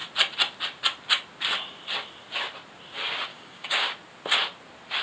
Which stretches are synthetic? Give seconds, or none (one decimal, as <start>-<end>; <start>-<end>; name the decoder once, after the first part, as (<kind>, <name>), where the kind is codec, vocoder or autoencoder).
3.3-3.9 (codec, DAC)